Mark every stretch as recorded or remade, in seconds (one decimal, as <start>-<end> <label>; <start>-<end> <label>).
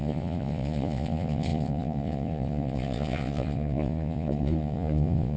0.0-5.4 remade